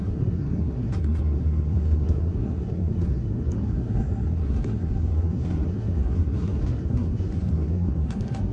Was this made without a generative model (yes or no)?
no